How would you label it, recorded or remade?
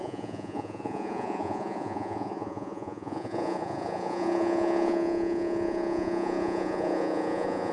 remade